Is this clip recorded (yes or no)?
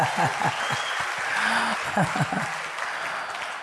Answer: yes